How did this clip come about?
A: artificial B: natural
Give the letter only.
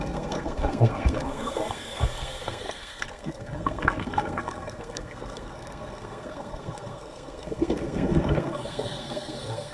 A